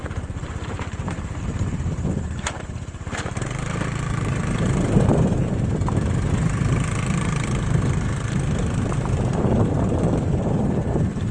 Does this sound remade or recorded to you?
remade